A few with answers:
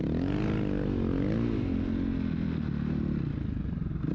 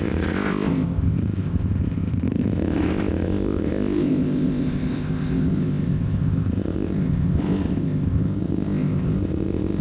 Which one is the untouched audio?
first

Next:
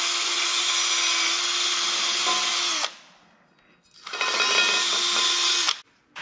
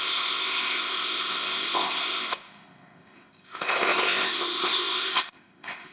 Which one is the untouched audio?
first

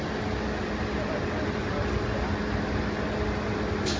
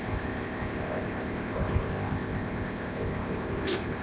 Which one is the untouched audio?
first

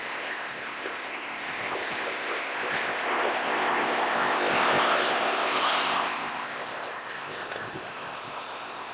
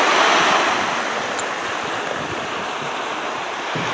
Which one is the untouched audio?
second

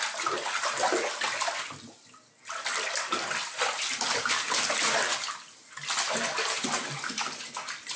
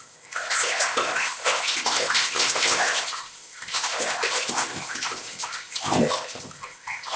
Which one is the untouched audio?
first